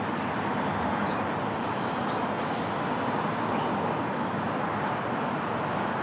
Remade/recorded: recorded